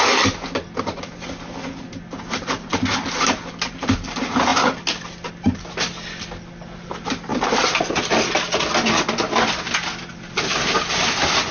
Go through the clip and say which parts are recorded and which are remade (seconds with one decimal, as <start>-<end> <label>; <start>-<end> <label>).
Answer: 0.0-11.5 recorded